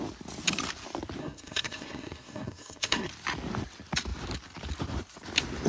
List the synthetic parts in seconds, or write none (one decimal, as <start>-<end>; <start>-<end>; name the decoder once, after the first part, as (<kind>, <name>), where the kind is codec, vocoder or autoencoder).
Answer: 1.2-3.1 (codec, SNAC)